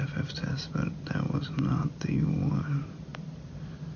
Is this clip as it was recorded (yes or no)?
yes